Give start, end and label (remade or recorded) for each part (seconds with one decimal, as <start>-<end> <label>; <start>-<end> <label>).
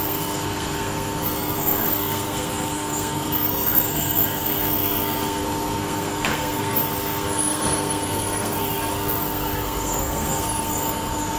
0.0-11.4 remade